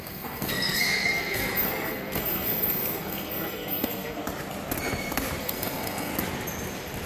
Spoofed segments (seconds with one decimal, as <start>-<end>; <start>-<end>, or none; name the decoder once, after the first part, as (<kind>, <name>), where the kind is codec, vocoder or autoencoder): 0.0-4.2 (codec, SNAC); 5.4-6.1